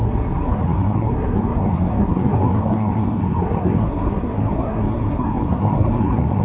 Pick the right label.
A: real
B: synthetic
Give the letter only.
B